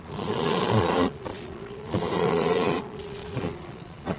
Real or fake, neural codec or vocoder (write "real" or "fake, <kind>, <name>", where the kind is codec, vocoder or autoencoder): fake, vocoder, Vocos